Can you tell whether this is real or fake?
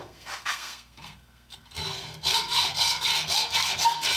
fake